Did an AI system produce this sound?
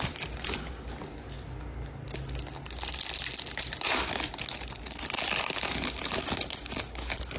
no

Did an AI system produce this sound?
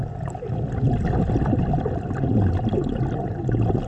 no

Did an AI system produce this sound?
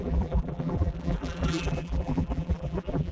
yes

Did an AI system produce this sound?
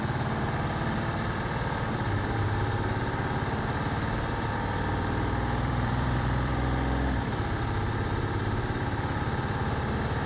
yes